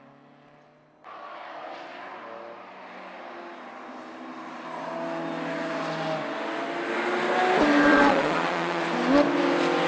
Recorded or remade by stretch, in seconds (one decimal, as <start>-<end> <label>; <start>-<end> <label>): 0.0-7.9 recorded; 7.9-8.8 remade; 8.8-9.9 recorded